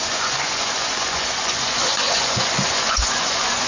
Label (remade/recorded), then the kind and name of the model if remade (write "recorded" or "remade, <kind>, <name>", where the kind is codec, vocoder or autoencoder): remade, vocoder, Vocos